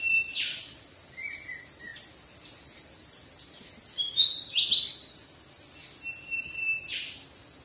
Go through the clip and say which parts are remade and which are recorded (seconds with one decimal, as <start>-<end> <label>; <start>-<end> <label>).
0.0-7.6 recorded